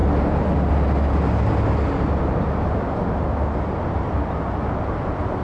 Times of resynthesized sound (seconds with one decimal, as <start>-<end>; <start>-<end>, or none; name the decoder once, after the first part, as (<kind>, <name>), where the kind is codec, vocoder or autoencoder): none